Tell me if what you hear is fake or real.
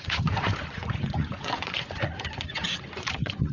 fake